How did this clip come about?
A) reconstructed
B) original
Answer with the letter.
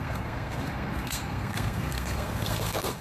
A